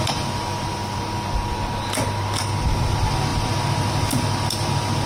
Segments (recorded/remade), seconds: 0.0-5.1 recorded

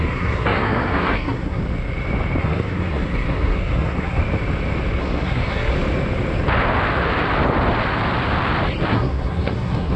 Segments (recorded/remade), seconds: 0.0-1.6 remade; 1.6-2.4 recorded; 2.4-4.2 remade; 4.2-5.0 recorded; 5.0-5.7 remade; 5.7-8.9 recorded; 8.9-10.0 remade

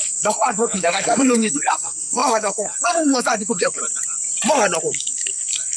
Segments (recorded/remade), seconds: 0.0-3.8 remade; 3.8-4.8 recorded; 4.8-5.8 remade